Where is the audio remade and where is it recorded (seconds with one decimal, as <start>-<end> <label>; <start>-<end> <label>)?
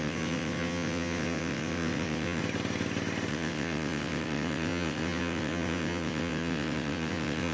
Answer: 0.0-2.4 remade; 2.4-3.3 recorded; 3.3-7.5 remade